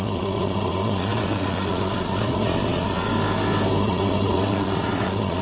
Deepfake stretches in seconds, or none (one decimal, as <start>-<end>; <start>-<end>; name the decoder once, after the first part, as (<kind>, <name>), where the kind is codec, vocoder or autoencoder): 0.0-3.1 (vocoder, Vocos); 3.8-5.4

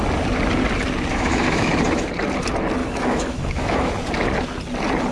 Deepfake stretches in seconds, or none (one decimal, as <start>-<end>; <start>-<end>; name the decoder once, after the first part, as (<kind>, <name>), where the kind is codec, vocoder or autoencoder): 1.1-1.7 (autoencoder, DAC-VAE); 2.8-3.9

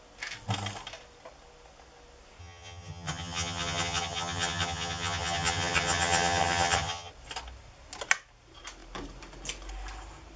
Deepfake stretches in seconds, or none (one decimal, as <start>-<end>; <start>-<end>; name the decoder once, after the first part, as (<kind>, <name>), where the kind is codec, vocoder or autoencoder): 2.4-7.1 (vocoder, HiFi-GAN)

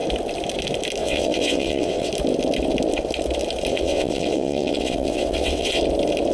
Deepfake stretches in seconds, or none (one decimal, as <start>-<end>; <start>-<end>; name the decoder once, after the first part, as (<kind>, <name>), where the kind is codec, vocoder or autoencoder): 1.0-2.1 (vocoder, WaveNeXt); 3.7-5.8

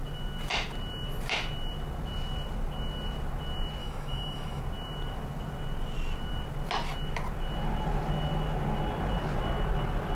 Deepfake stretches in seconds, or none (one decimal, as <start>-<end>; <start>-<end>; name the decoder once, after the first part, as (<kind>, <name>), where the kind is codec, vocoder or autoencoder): 3.8-4.6 (autoencoder, DAC-VAE)

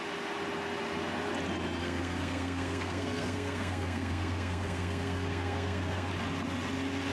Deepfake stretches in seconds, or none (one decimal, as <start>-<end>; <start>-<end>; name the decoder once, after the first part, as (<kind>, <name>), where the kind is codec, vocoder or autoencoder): 1.8-6.1 (codec, SNAC)